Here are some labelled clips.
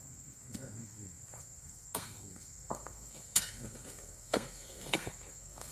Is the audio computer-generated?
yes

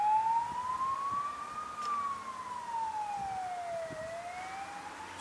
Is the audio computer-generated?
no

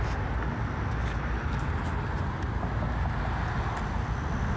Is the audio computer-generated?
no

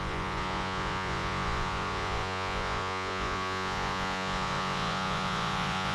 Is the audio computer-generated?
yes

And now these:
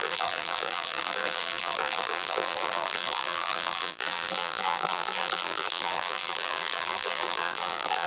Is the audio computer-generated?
yes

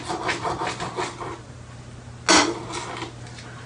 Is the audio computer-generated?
no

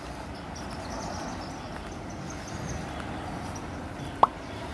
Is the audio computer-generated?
no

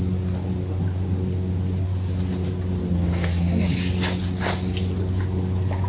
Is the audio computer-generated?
no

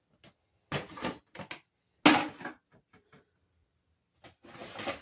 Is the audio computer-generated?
no